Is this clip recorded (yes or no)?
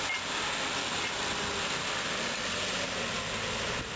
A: yes